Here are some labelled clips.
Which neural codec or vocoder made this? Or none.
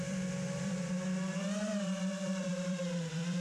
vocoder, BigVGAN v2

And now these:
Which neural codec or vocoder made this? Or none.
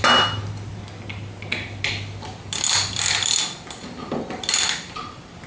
none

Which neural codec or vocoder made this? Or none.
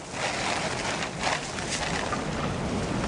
none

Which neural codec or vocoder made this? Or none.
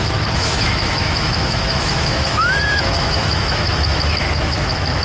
autoencoder, DAC-VAE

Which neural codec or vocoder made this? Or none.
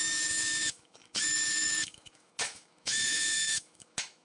autoencoder, DAC-VAE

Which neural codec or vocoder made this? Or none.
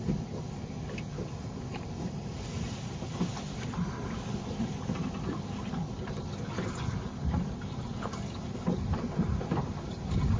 none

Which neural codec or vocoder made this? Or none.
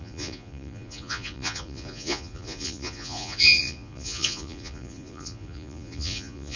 vocoder, Vocos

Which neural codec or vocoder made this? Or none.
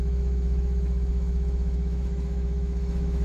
autoencoder, DAC-VAE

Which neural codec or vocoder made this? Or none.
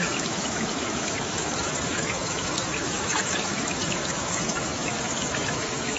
autoencoder, DAC-VAE